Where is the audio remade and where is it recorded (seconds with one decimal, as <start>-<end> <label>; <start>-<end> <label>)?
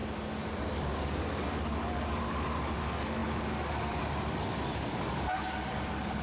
0.0-0.7 recorded; 0.7-6.2 remade